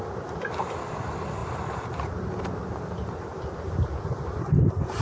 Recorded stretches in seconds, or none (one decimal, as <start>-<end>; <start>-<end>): 0.0-5.0